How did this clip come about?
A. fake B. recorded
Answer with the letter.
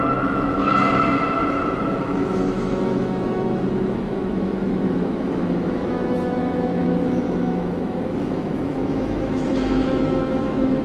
A